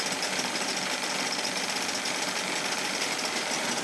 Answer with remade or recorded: remade